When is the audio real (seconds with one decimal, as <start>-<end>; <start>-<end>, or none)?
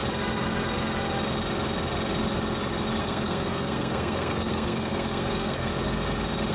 0.0-3.0; 5.7-6.5